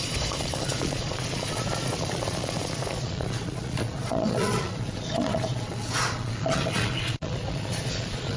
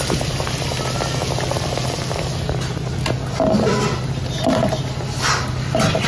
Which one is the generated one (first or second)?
first